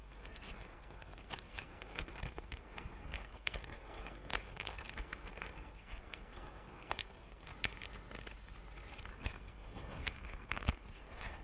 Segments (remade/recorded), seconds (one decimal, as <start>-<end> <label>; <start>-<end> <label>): 0.0-7.5 remade; 7.5-9.1 recorded; 9.1-11.4 remade